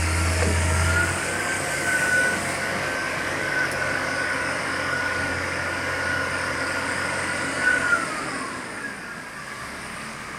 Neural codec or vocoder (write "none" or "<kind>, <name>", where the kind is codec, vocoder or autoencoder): codec, DAC